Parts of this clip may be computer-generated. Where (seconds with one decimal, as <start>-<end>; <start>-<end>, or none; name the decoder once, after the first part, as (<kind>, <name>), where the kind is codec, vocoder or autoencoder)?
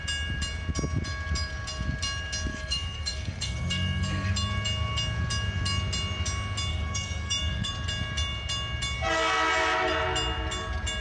2.5-4.3 (codec, DAC); 6.7-7.7